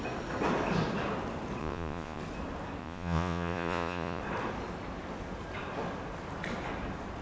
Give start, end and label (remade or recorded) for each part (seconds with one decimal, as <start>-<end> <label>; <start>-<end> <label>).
0.0-1.6 recorded; 1.6-2.2 remade; 2.2-2.8 recorded; 2.8-4.2 remade; 4.2-7.2 recorded